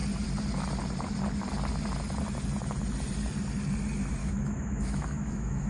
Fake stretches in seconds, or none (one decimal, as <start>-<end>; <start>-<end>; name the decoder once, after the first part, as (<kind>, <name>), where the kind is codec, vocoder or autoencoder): 4.2-5.7 (autoencoder, DAC-VAE)